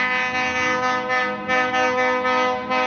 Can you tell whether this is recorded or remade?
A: recorded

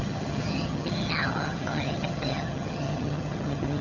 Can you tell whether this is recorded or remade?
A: remade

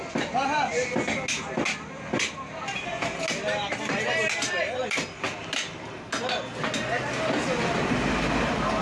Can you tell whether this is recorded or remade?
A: recorded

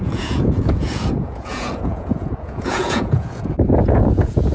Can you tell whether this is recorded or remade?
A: remade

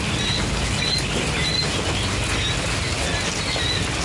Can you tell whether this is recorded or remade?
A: recorded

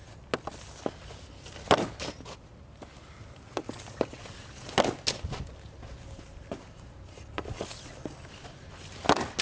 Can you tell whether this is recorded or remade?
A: recorded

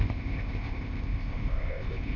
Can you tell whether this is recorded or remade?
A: remade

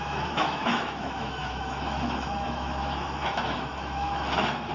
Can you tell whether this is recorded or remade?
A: remade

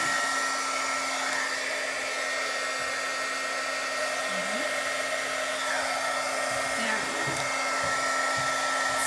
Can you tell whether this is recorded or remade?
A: recorded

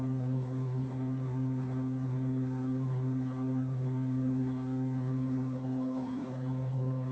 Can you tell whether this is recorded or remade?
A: remade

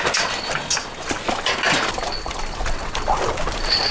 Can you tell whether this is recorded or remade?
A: recorded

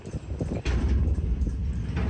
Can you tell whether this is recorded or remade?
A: recorded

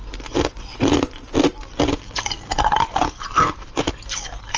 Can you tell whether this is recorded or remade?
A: recorded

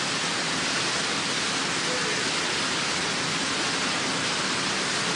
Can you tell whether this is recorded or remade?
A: recorded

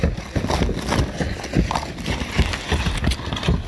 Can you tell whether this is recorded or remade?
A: recorded